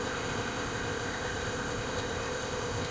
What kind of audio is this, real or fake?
fake